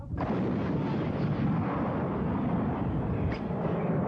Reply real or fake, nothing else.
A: real